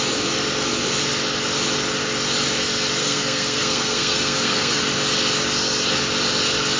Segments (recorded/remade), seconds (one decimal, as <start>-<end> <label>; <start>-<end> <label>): 0.0-3.0 recorded; 3.0-4.8 remade; 4.8-6.8 recorded